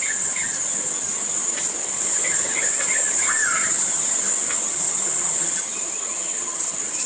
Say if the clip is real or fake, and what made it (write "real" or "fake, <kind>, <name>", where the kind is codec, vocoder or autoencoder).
fake, vocoder, HiFi-GAN